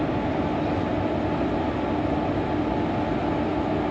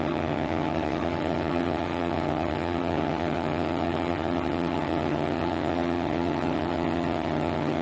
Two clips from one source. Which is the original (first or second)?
first